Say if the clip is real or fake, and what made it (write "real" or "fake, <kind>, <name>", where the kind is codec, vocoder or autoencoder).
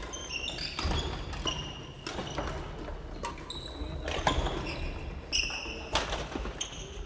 real